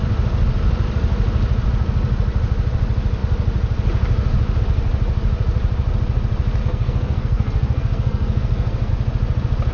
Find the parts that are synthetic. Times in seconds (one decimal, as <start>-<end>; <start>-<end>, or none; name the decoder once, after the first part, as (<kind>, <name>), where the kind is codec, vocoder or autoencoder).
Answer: 6.6-8.9 (codec, SNAC)